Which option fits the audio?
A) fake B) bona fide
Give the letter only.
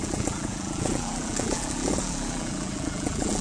A